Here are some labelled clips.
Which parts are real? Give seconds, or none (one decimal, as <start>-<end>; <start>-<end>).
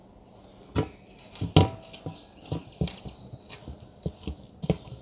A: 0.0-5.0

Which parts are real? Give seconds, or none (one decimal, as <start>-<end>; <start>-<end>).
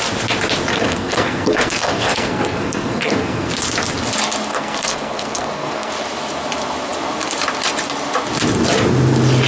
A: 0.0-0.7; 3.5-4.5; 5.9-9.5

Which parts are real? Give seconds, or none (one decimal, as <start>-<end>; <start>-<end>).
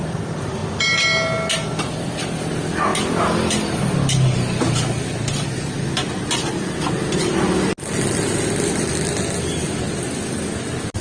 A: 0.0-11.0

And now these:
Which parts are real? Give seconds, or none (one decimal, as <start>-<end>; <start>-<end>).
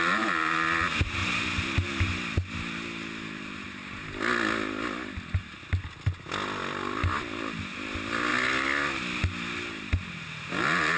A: 0.0-11.0